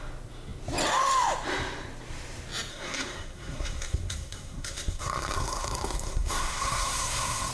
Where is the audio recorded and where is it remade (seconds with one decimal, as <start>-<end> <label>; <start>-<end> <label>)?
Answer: 0.0-2.7 recorded; 2.7-7.5 remade